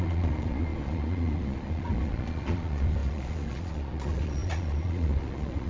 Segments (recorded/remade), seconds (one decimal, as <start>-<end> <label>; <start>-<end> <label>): 0.0-5.7 remade